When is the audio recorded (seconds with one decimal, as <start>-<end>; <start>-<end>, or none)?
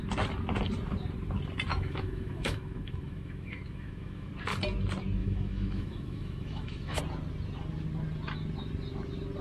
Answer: 0.0-1.7; 4.3-5.2; 7.0-9.4